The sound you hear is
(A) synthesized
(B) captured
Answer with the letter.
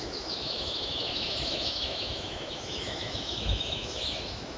A